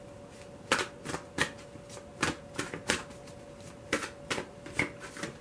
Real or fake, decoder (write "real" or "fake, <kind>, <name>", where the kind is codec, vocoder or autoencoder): real